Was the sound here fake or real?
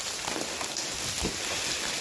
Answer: real